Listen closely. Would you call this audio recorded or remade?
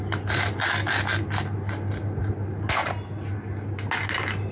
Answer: recorded